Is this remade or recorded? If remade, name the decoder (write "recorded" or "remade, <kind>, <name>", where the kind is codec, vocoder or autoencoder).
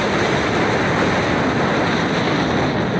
recorded